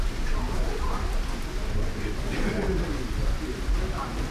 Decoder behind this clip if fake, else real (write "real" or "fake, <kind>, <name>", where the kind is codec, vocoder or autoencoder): real